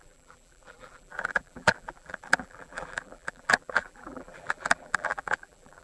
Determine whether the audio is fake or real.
fake